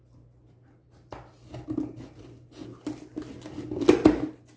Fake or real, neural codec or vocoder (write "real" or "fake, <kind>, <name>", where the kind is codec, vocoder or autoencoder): real